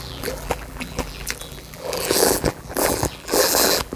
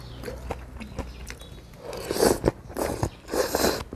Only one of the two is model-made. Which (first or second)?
first